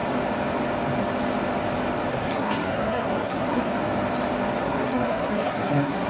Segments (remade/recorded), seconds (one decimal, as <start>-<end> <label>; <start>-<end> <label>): 0.0-2.1 recorded; 2.1-3.7 remade; 3.7-4.6 recorded; 4.6-6.1 remade